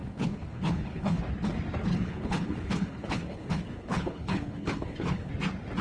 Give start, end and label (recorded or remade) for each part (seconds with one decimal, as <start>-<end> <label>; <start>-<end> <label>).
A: 0.0-1.2 remade; 1.2-1.9 recorded; 1.9-5.3 remade; 5.3-5.8 recorded